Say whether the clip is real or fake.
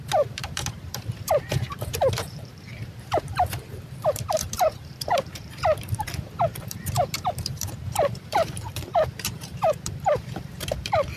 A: fake